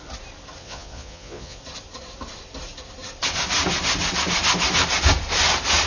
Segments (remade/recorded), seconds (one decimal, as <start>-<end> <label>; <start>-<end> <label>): 0.0-0.6 recorded; 0.6-1.6 remade; 1.6-5.9 recorded